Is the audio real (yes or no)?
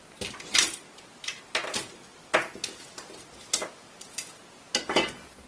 yes